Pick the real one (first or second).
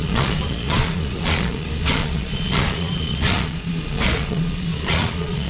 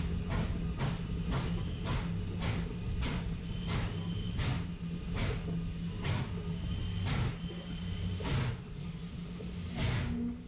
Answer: second